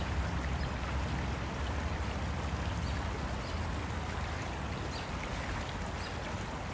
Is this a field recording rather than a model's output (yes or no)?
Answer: yes